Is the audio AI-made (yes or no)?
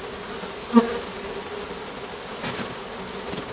no